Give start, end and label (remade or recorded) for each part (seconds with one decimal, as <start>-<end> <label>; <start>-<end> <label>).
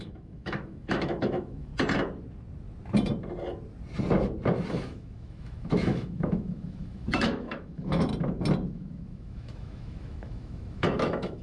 0.0-1.7 remade; 1.7-4.7 recorded; 4.7-8.1 remade; 8.1-8.7 recorded; 8.7-11.4 remade